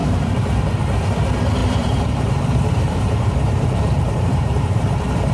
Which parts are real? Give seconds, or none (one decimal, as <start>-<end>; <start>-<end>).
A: 0.6-1.6; 4.8-5.3